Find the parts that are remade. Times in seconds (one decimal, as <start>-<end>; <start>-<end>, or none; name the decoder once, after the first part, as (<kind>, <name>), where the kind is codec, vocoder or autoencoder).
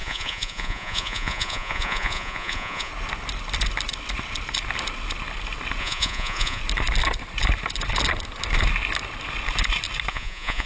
0.0-2.9 (vocoder, Vocos); 5.8-6.6; 10.1-10.7